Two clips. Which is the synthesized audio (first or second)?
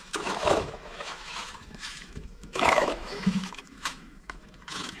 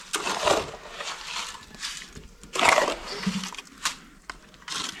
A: first